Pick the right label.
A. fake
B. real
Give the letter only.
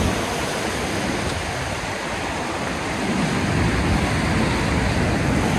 B